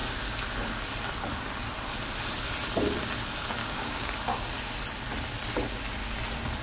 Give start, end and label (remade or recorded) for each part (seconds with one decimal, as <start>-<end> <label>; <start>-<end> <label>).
0.0-3.6 recorded; 3.6-4.1 remade; 4.1-6.6 recorded